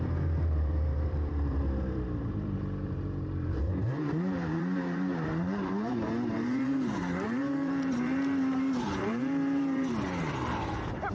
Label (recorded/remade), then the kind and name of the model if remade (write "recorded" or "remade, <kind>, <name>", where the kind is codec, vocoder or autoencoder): remade, vocoder, BigVGAN v2